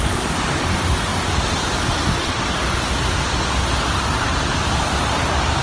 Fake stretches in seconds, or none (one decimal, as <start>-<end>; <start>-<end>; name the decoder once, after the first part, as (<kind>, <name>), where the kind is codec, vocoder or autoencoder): 1.1-2.3 (vocoder, BigVGAN v2); 4.3-5.6